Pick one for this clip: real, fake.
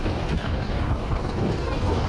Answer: fake